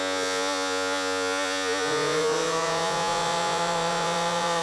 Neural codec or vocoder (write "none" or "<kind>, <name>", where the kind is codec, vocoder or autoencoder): vocoder, Vocos